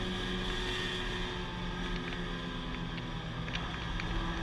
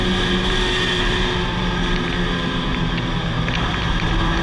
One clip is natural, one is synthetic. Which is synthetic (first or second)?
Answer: second